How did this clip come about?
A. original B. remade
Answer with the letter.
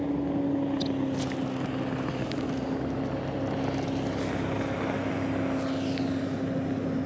A